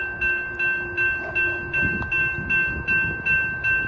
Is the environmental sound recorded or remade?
recorded